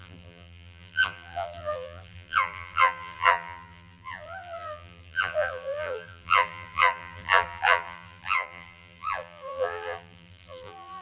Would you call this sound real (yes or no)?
no